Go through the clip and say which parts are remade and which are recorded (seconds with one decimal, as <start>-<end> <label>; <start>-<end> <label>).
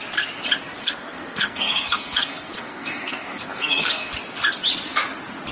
0.0-0.8 recorded; 0.8-4.1 remade; 4.1-5.5 recorded